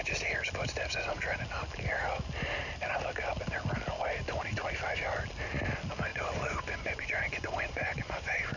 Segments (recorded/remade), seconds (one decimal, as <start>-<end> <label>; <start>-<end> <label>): 0.0-6.1 recorded; 6.1-8.6 remade